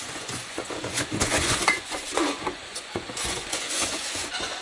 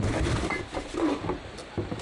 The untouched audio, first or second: second